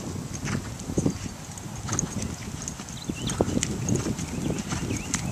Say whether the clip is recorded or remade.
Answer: recorded